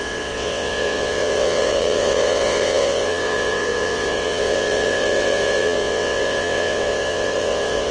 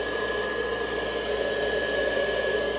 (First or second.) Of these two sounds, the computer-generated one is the first